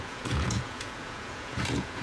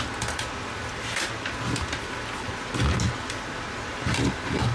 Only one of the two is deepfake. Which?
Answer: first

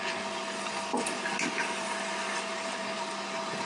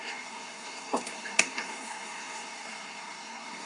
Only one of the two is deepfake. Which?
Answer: second